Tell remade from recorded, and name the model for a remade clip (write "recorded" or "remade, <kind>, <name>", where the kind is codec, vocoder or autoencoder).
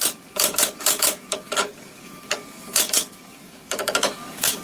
remade, codec, DAC